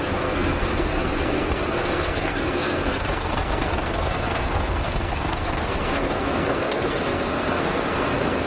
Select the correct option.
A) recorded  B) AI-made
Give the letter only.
B